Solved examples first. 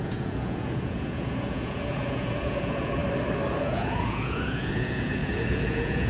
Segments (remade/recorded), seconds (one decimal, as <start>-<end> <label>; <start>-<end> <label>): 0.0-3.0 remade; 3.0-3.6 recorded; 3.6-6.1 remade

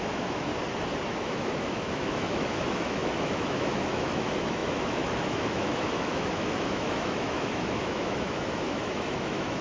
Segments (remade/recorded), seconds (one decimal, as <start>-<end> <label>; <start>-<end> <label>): 0.0-0.5 remade; 0.5-1.1 recorded; 1.1-9.6 remade

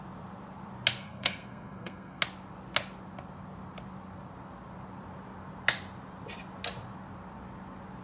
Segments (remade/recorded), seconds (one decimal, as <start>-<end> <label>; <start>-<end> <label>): 0.0-1.0 recorded; 1.0-2.2 remade; 2.2-8.0 recorded